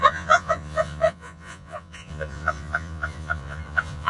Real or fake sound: fake